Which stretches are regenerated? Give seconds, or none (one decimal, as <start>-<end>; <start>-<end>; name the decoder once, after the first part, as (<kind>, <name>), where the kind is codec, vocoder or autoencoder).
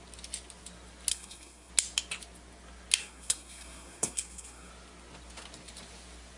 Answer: 1.1-1.7 (codec, SNAC); 3.0-4.7